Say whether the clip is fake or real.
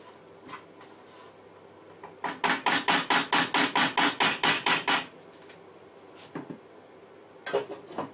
real